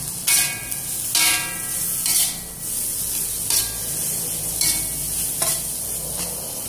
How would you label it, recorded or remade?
recorded